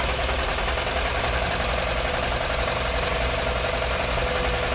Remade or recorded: recorded